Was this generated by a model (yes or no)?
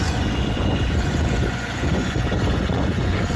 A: yes